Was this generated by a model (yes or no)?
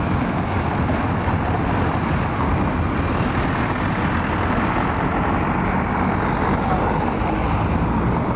no